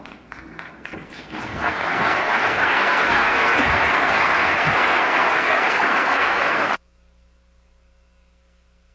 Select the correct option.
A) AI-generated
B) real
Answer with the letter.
A